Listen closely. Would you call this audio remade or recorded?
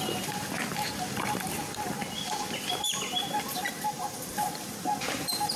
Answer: remade